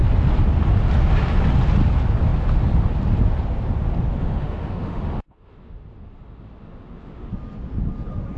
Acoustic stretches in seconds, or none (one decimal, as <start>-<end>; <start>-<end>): 0.0-4.2; 7.3-8.4

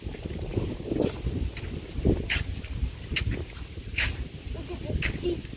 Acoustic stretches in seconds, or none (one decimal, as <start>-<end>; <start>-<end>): 0.0-5.6

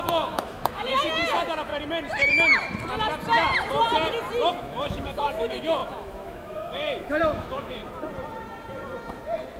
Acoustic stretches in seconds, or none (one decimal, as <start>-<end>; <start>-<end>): 1.7-4.5; 7.8-9.6

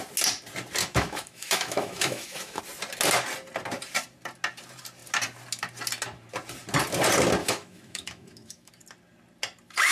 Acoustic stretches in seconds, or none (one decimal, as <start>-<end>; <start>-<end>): 0.0-0.8; 2.6-7.4; 8.7-9.9

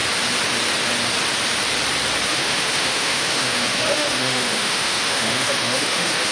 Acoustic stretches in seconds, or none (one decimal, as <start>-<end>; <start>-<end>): 0.0-2.3